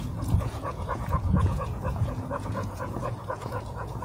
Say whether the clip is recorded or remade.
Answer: remade